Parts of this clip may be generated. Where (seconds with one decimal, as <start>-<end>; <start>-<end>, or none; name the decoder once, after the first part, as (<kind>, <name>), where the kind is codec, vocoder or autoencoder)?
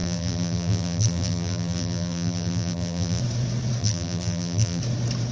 0.0-3.2 (vocoder, BigVGAN v2); 3.8-4.8